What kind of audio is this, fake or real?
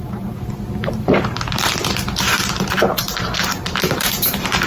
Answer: fake